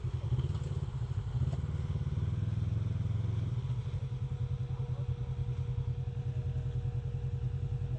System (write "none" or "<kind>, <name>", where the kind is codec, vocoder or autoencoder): none